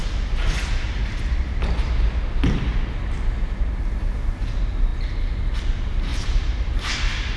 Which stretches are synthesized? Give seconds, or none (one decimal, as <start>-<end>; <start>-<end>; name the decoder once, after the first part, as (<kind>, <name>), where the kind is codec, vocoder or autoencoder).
6.1-6.9 (vocoder, BigVGAN v2)